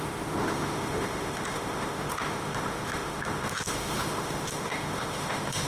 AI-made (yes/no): yes